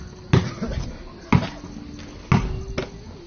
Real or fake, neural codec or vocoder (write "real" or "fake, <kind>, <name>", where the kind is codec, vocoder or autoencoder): real